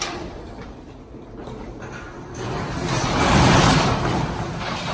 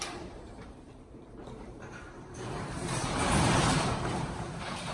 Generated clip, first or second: second